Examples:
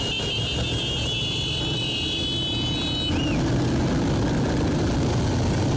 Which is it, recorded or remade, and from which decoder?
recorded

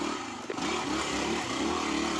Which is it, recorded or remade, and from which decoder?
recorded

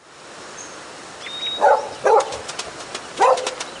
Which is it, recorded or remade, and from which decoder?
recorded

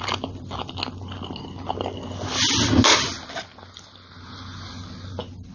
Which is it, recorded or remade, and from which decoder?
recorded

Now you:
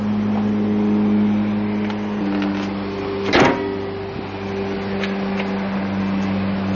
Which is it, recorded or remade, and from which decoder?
recorded